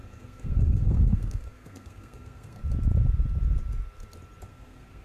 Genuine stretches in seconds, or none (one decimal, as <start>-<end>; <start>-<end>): 2.6-4.5